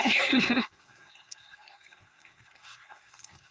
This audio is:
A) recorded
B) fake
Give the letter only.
B